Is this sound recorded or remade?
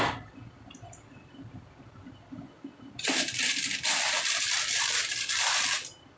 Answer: recorded